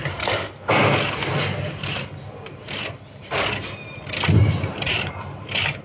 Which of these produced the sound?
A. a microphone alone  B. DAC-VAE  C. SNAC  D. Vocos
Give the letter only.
A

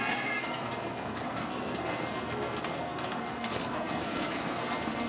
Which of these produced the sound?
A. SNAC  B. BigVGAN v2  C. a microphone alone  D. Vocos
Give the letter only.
A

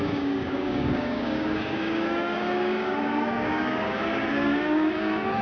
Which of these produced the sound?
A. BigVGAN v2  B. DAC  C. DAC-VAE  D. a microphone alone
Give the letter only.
B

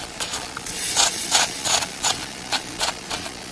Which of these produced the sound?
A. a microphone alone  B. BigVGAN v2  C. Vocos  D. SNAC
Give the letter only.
C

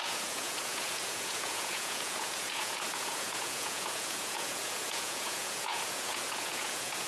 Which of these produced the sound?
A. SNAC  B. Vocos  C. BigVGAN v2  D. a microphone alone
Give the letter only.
B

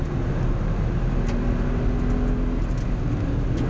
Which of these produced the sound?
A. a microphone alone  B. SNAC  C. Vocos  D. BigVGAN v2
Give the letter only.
A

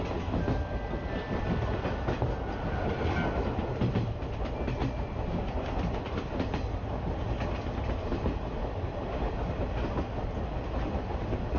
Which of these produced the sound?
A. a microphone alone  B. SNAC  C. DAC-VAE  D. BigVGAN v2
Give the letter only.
A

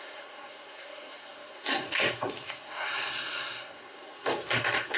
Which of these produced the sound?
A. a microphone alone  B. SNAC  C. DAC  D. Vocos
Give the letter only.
B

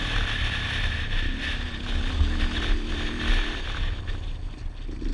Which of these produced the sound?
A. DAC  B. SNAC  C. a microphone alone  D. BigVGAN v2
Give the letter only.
C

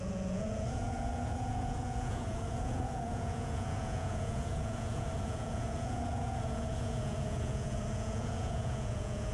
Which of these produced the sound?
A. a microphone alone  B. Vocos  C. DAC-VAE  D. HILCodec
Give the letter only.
B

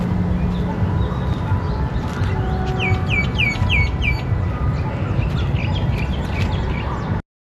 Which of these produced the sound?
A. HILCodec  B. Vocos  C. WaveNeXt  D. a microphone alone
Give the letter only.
D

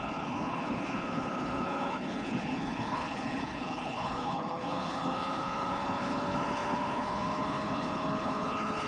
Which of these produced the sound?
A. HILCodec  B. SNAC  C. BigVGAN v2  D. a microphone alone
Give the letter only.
A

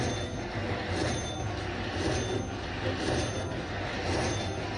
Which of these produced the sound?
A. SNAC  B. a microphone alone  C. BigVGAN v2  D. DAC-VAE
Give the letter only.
B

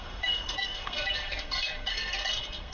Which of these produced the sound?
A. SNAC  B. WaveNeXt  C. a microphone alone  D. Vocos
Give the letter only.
A